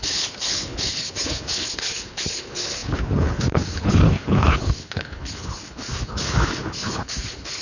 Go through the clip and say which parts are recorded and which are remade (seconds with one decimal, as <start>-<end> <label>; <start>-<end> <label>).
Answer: 0.0-7.6 remade